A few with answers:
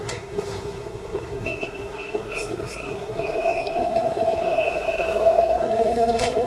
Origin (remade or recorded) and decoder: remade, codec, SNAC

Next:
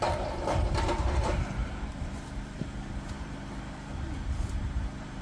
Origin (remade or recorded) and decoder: remade, vocoder, BigVGAN v2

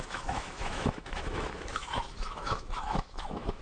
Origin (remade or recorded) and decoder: remade, autoencoder, DAC-VAE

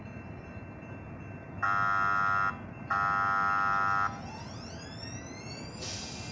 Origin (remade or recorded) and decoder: recorded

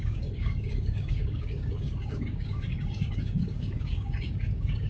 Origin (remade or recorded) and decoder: remade, codec, DAC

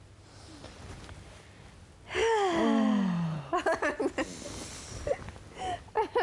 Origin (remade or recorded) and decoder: recorded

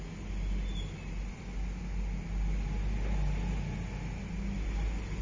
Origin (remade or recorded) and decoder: recorded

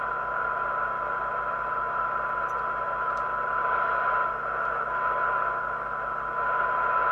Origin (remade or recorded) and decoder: recorded